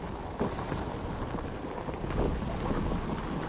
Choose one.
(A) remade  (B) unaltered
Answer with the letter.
B